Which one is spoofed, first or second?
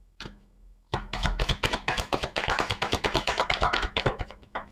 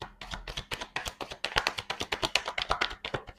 first